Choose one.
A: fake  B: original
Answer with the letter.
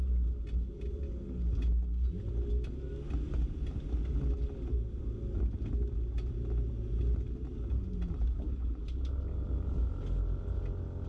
B